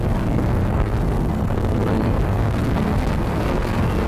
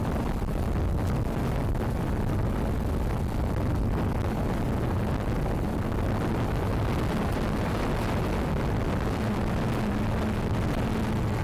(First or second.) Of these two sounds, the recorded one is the second